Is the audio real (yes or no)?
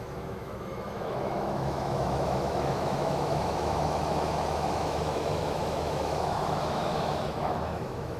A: no